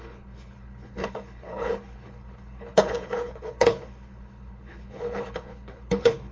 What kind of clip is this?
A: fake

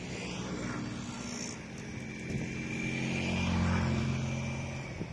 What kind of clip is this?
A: real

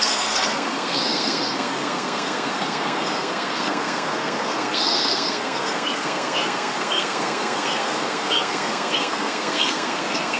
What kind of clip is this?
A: fake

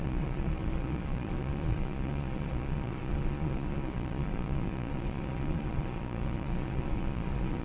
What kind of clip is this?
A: fake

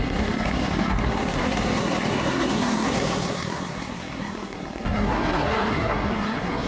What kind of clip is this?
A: fake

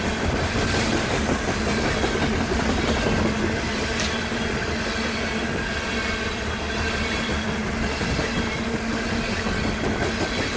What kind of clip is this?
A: real